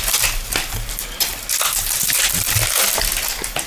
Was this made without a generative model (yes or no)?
yes